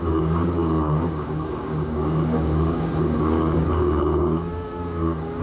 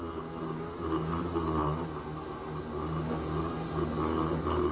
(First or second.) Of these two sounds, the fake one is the first